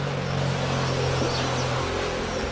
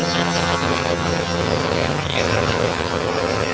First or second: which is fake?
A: second